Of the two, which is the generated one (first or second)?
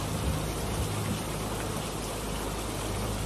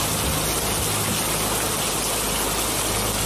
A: first